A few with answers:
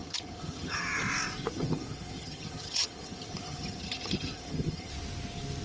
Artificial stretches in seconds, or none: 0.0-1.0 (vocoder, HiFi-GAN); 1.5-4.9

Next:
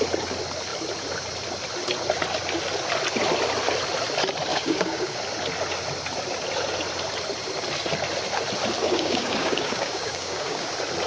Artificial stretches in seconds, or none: 4.5-5.2 (codec, DAC); 8.8-10.7

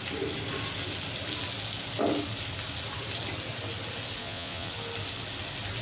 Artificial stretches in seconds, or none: 4.2-4.7 (vocoder, Vocos)